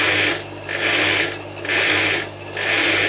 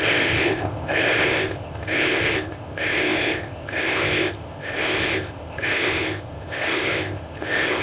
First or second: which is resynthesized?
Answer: second